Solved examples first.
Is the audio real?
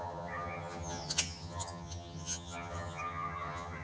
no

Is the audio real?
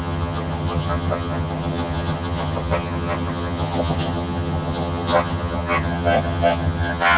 no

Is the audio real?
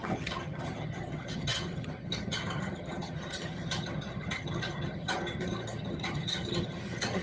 no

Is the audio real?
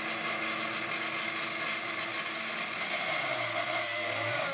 yes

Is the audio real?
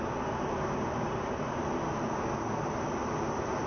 yes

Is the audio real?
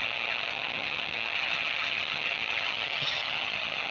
no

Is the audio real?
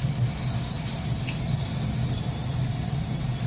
yes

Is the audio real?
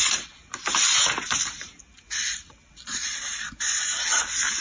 yes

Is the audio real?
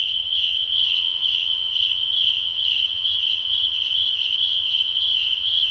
no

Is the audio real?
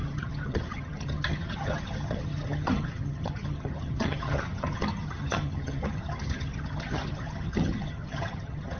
no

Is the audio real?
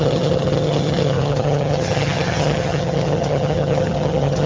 no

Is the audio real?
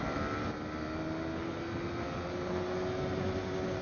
yes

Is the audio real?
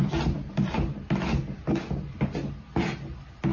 yes